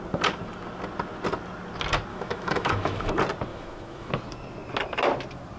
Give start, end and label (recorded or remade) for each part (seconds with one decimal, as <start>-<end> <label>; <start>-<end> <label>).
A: 0.0-2.1 recorded; 2.1-3.1 remade; 3.1-3.5 recorded; 3.5-4.1 remade; 4.1-5.6 recorded